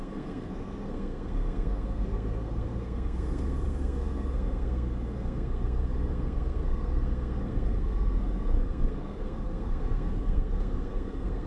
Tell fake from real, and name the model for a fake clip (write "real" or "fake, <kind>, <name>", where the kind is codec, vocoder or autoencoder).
fake, codec, SNAC